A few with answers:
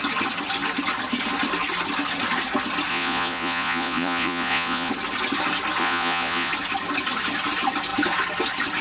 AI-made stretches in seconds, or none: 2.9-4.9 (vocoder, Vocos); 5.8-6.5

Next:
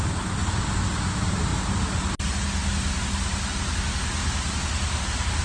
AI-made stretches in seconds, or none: none